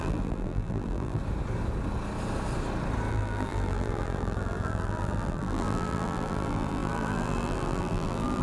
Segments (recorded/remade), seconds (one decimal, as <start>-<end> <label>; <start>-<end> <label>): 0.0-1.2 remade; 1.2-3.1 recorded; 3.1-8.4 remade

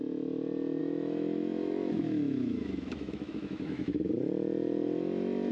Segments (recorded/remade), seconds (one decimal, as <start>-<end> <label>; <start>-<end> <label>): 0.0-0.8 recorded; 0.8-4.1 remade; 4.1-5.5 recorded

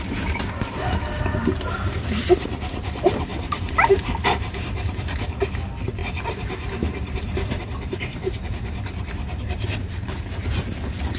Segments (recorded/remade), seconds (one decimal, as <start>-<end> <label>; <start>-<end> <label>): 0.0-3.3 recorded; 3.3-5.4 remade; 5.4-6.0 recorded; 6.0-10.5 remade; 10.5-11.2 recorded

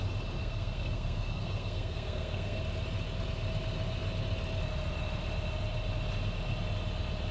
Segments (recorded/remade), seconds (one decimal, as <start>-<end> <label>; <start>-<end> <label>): 0.0-0.4 recorded; 0.4-2.6 remade; 2.6-7.3 recorded

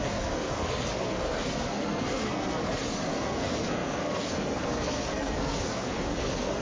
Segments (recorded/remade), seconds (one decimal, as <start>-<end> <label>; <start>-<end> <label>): 0.0-2.6 remade; 2.6-3.1 recorded; 3.1-6.6 remade